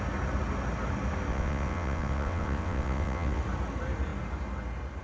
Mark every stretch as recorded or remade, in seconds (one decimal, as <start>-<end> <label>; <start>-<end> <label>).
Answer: 0.0-1.3 recorded; 1.3-3.4 remade; 3.4-5.0 recorded